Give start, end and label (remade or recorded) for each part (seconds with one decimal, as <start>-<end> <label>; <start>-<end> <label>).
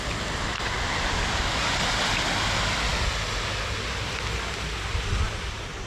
0.0-5.9 recorded